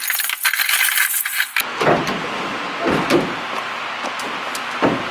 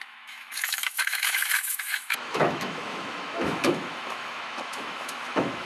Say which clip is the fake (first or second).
second